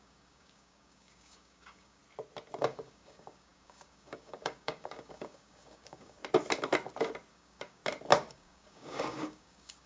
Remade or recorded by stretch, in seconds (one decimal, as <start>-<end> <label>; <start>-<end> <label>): 0.0-2.0 remade; 2.0-2.6 recorded; 2.6-6.2 remade; 6.2-7.3 recorded; 7.3-7.8 remade; 7.8-8.3 recorded; 8.3-9.9 remade